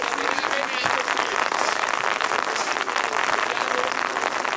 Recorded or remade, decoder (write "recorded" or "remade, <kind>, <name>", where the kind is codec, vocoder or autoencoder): recorded